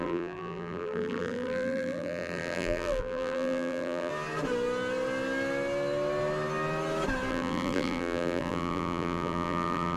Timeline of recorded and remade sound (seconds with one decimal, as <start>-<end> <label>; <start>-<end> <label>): 0.0-4.1 remade; 4.1-7.3 recorded; 7.3-10.0 remade